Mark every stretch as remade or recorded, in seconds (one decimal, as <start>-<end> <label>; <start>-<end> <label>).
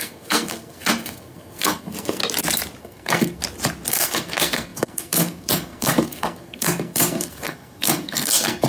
0.0-2.2 remade; 2.2-2.8 recorded; 2.8-3.4 remade; 3.4-3.9 recorded; 3.9-8.7 remade